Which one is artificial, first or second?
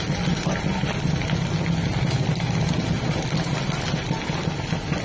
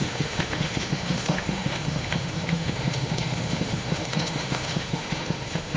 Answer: second